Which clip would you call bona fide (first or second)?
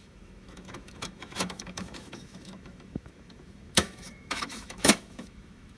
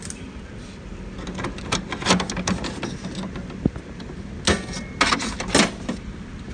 second